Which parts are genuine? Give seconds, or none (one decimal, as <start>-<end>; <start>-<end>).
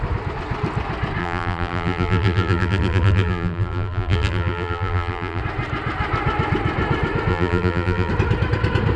0.0-1.2; 5.4-7.3; 8.1-9.0